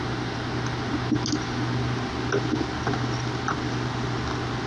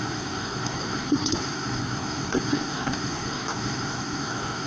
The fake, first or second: second